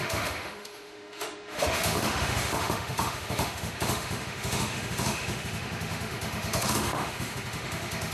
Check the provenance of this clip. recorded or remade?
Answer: remade